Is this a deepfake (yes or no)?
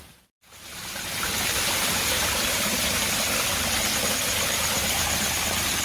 yes